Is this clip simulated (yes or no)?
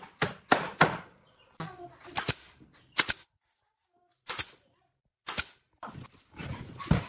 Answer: no